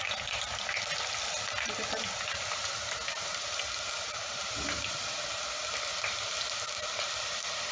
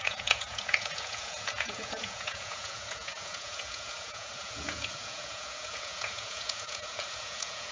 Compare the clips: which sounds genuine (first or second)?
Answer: first